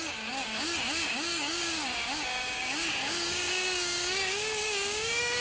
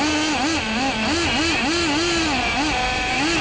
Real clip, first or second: second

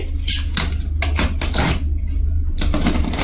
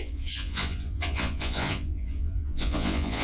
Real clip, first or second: first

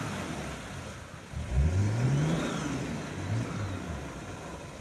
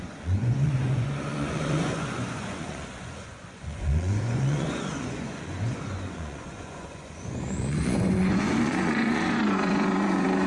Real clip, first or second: first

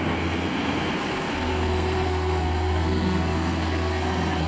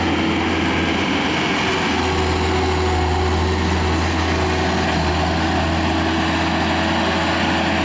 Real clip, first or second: second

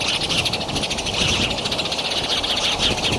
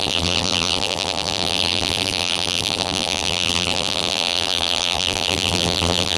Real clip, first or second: first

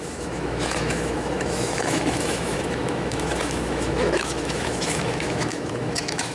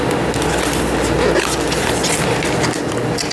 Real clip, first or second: second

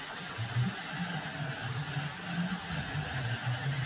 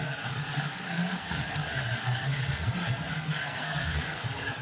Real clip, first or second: first